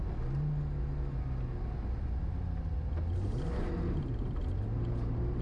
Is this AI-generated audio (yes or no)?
no